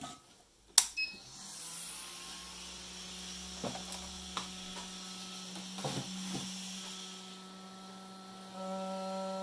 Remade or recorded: recorded